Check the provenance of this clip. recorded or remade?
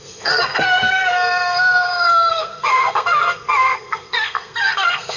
remade